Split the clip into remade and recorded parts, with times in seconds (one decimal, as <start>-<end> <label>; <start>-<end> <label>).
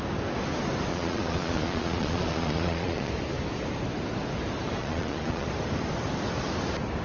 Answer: 0.0-0.9 recorded; 0.9-3.1 remade; 3.1-4.8 recorded; 4.8-5.5 remade; 5.5-7.0 recorded